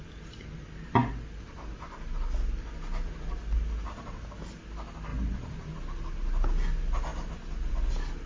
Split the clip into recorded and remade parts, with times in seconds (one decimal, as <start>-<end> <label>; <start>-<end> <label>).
0.0-8.3 recorded